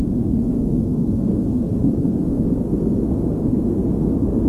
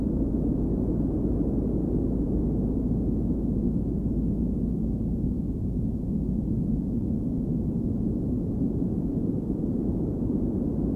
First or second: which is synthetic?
first